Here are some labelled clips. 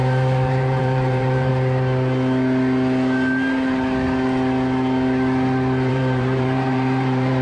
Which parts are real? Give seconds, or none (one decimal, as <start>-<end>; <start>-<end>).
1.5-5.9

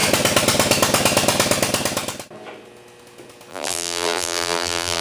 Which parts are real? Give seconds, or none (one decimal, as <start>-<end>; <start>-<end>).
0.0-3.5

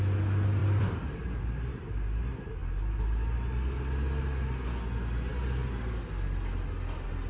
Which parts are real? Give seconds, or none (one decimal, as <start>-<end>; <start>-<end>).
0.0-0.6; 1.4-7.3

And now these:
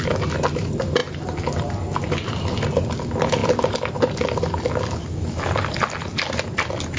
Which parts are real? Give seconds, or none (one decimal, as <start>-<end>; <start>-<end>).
0.0-7.0

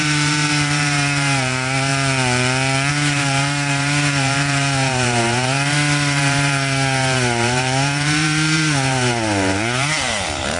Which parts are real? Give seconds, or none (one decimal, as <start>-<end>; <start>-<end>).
1.9-2.9

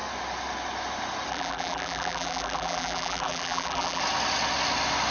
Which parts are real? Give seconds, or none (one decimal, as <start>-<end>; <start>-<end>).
0.0-1.3; 4.0-5.1